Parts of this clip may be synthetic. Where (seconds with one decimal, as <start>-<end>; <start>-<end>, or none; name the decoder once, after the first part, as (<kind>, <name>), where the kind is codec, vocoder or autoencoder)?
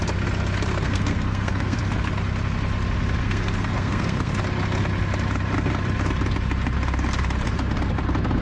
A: 0.7-1.8 (codec, SNAC); 3.2-4.3